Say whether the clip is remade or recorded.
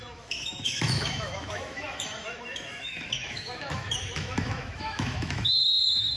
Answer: remade